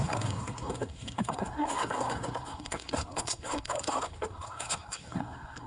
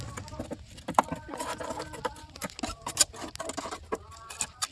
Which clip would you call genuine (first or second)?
second